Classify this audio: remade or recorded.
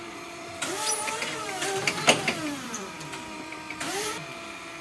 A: remade